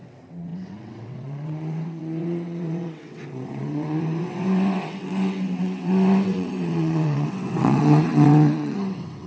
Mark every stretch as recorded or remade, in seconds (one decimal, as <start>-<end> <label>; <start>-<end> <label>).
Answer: 0.0-9.3 remade